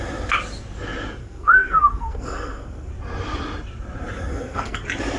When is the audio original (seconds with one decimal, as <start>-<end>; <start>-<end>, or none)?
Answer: 0.0-1.2; 2.9-4.3; 4.8-5.2